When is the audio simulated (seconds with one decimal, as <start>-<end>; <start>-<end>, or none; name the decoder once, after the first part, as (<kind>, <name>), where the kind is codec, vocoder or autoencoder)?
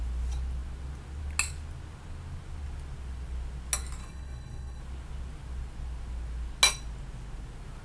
4.0-4.8 (codec, HILCodec)